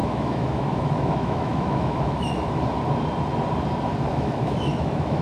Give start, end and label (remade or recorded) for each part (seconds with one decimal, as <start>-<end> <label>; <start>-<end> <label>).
0.0-2.6 remade; 2.6-4.1 recorded; 4.1-5.2 remade